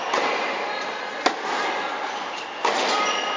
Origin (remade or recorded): recorded